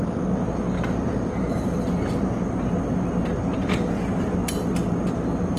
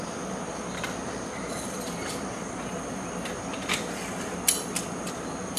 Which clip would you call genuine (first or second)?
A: first